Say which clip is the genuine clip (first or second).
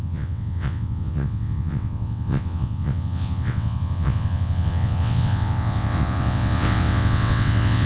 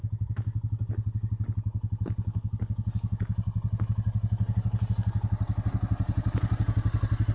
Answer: second